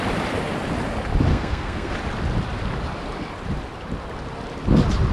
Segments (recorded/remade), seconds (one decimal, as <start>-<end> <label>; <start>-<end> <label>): 0.0-1.3 recorded; 1.3-1.9 remade; 1.9-5.1 recorded